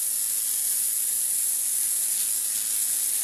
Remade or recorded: recorded